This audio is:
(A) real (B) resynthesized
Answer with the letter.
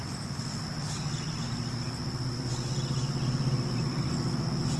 B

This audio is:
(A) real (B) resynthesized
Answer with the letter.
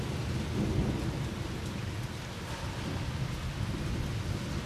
A